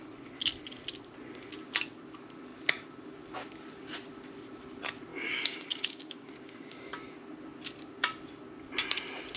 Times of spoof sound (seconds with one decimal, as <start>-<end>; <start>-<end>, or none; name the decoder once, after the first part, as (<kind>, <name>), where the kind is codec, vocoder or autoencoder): 5.1-6.9 (codec, DAC)